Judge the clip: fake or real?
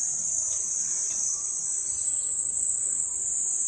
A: real